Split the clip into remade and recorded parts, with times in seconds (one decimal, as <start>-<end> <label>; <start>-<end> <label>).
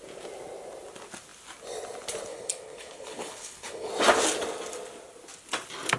0.0-2.3 recorded; 2.3-3.9 remade; 3.9-6.0 recorded